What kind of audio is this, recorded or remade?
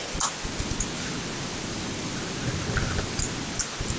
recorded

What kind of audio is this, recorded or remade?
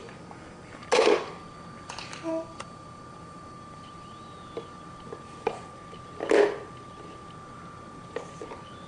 recorded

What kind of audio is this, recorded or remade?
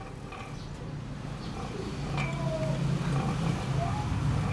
recorded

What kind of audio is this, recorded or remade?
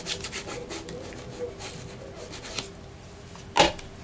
recorded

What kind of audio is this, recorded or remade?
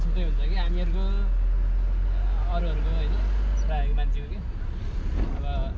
recorded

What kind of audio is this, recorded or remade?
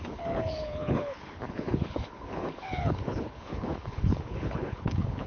remade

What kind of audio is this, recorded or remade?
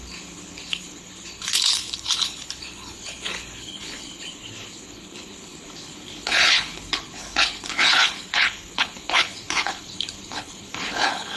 remade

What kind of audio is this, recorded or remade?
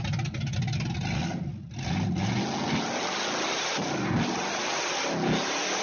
recorded